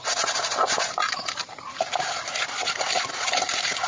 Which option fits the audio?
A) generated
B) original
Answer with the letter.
B